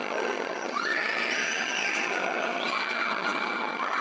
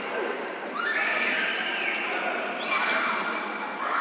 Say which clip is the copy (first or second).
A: first